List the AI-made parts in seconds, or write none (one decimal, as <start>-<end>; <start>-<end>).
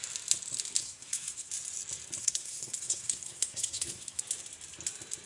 0.8-1.5; 2.2-4.2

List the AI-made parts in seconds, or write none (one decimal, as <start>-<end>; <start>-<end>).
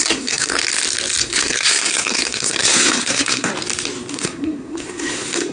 0.0-0.6; 1.2-3.5; 4.1-5.5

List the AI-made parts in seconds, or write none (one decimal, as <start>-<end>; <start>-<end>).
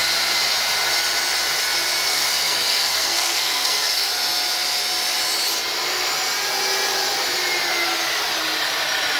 2.1-4.1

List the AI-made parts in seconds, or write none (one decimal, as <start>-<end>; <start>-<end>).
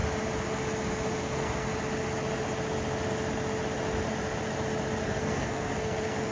1.2-1.7; 5.0-6.3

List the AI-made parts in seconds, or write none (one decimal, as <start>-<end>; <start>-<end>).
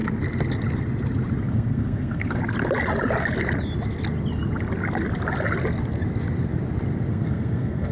1.5-2.4; 7.1-7.9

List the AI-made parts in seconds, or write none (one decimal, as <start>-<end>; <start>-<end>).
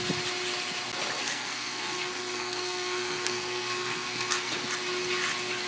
1.2-4.6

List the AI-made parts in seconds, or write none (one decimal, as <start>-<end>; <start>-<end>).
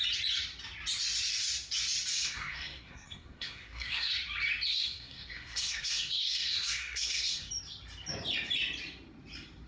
2.1-4.1; 4.7-7.5